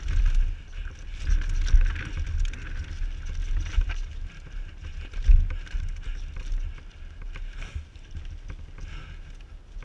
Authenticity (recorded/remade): recorded